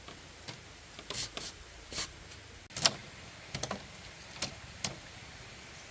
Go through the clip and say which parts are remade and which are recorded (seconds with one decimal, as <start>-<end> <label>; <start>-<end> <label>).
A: 0.0-5.9 recorded